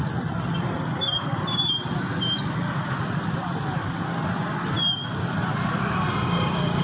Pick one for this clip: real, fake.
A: real